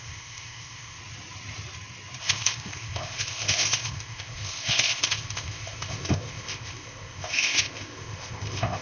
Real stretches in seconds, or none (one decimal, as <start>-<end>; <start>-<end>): 1.0-2.2